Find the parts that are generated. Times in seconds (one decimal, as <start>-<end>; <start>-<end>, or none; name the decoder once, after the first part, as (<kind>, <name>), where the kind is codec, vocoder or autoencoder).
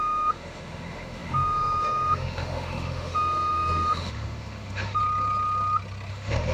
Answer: 0.0-5.0 (autoencoder, DAC-VAE); 6.1-6.5